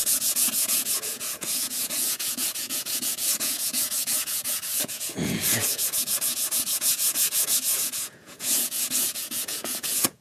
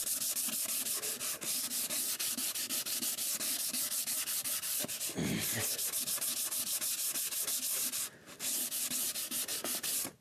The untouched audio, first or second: second